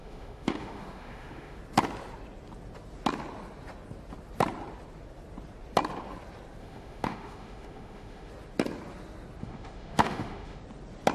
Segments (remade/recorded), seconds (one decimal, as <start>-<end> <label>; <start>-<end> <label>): 0.0-1.6 remade; 1.6-6.6 recorded; 6.6-8.3 remade; 8.3-9.4 recorded; 9.4-10.6 remade; 10.6-11.1 recorded